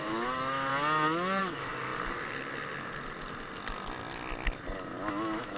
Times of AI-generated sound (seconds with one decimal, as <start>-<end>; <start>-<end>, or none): 0.0-0.7; 1.4-1.9; 5.1-5.6